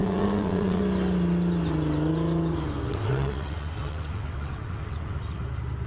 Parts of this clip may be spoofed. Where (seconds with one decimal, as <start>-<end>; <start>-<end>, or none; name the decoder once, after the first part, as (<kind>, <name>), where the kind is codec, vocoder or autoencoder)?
0.0-0.8 (vocoder, WaveNeXt); 2.9-5.4